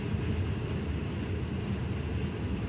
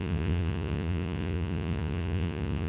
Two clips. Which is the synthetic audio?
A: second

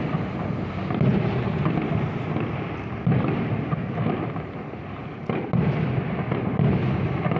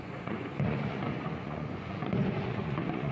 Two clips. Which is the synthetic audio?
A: second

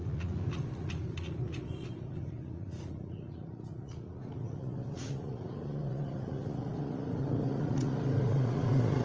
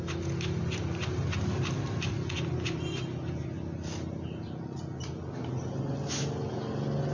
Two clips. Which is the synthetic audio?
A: first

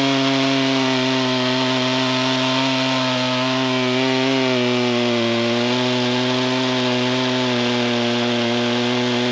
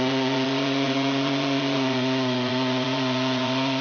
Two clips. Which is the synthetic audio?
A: second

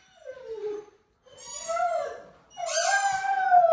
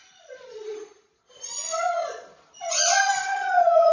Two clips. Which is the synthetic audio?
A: second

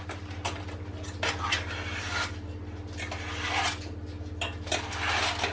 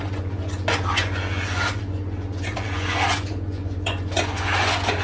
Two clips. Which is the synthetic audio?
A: second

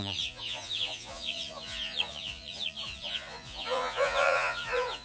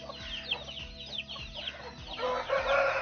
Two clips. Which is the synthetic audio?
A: first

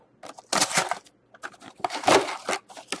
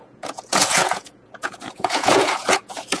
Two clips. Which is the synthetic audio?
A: second